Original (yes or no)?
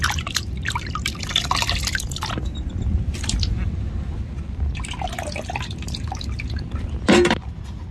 yes